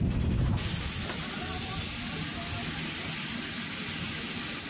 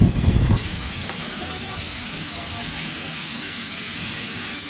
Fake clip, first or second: second